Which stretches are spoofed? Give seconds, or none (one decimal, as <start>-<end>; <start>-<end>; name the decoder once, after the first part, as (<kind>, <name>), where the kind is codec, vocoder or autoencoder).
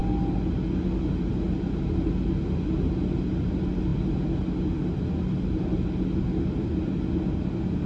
none